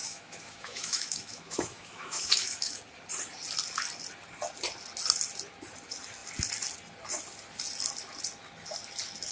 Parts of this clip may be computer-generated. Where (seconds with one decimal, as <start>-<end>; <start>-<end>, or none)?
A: 0.0-2.8